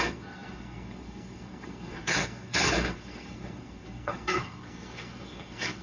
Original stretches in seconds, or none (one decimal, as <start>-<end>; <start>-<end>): none